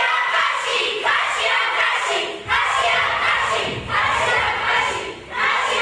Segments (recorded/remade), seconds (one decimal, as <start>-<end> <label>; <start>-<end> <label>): 0.0-0.7 recorded; 0.7-2.5 remade; 2.5-3.1 recorded; 3.1-4.5 remade; 4.5-5.8 recorded